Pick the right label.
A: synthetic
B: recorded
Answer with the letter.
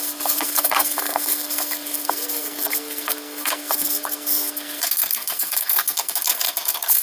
A